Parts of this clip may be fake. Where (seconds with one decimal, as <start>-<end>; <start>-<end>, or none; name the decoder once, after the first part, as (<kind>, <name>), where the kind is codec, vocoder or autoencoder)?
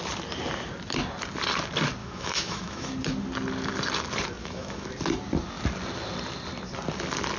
2.0-2.9 (autoencoder, DAC-VAE); 4.4-4.9